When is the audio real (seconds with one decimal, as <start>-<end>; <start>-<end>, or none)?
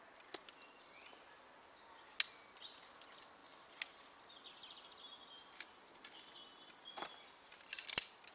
0.0-8.3